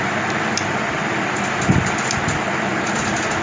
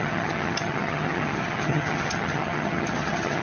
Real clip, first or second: first